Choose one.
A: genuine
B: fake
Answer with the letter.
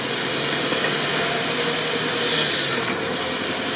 A